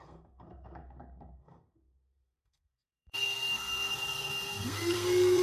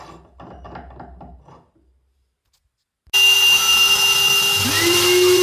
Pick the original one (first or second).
second